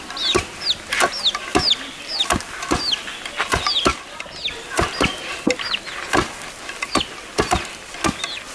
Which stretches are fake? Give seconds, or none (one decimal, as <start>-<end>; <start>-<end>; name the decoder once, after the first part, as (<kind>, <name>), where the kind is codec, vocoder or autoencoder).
none